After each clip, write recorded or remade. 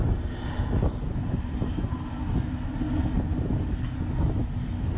recorded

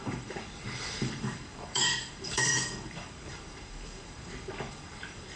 remade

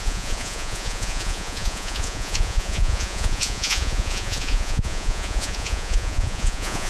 remade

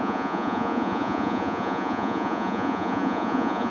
remade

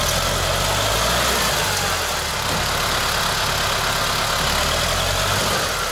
recorded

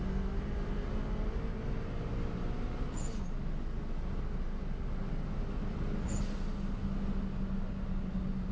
recorded